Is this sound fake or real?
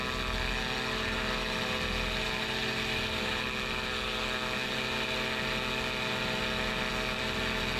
real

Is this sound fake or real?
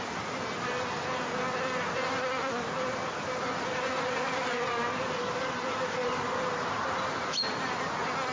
real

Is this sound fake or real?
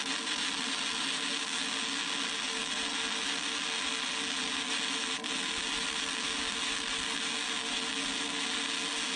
real